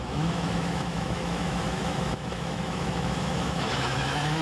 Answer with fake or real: fake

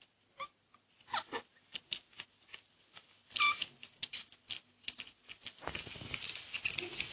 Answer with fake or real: real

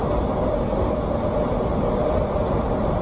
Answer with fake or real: real